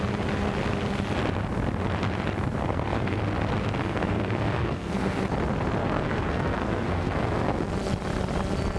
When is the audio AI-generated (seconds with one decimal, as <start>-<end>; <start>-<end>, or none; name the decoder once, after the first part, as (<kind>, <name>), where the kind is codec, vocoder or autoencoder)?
2.6-3.2 (codec, SNAC); 3.8-5.2; 5.8-7.7